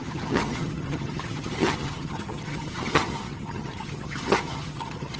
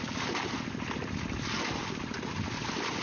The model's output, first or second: first